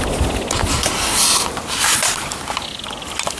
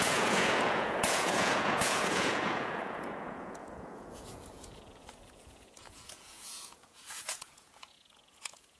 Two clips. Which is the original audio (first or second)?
first